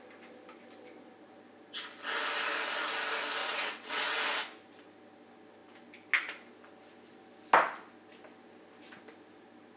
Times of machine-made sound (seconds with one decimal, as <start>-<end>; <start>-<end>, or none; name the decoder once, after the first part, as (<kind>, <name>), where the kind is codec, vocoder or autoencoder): 3.4-4.0 (vocoder, WaveNeXt)